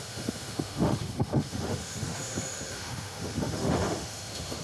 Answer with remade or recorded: remade